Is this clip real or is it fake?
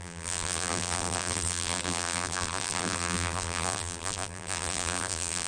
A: fake